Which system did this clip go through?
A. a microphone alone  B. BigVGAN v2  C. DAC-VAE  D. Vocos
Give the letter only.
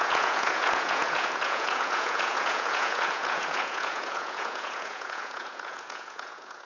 D